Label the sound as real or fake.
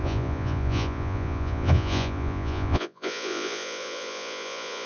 fake